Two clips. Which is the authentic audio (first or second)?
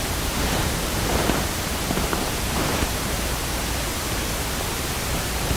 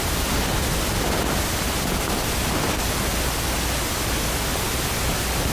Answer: second